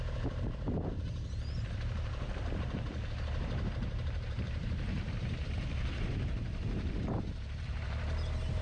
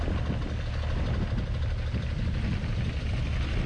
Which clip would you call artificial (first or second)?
first